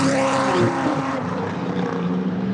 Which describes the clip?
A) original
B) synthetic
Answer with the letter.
B